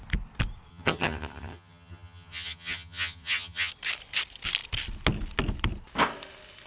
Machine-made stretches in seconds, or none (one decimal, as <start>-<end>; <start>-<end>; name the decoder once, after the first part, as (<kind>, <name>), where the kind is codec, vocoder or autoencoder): 0.7-3.7 (vocoder, HiFi-GAN)